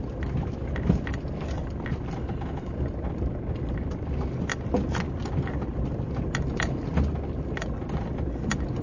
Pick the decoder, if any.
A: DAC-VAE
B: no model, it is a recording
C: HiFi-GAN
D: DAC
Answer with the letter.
B